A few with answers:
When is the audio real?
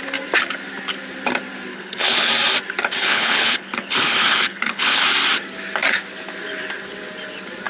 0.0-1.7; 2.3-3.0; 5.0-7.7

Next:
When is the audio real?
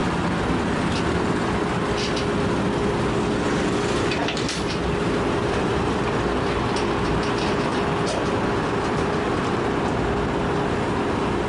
0.0-4.2; 7.1-7.7; 9.3-11.5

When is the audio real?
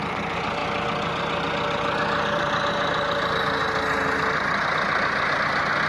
0.0-5.9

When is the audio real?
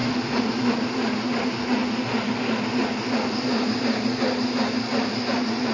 0.0-5.7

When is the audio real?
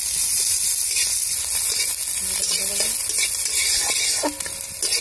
0.0-5.0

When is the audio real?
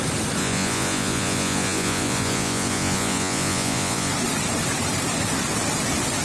0.0-0.4; 4.1-6.2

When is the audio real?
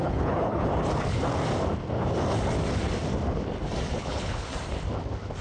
0.7-3.9; 4.5-5.4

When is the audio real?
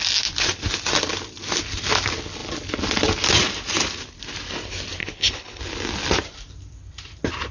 0.0-5.0; 5.6-7.5